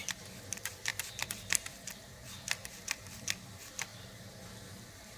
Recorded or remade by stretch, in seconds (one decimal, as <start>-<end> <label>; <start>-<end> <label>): 0.0-5.2 recorded